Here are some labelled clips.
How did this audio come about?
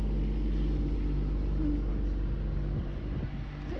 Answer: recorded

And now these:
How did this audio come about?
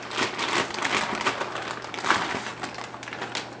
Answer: recorded